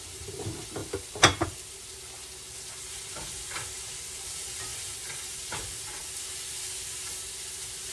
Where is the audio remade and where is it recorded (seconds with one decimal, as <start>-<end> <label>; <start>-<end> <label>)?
0.0-4.7 recorded; 4.7-5.4 remade; 5.4-7.9 recorded